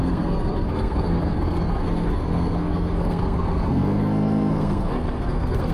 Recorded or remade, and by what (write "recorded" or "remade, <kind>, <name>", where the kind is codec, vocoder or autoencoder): remade, codec, SNAC